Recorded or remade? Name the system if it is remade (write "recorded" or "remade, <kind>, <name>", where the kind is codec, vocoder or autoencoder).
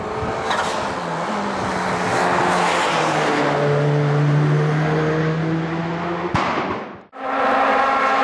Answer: recorded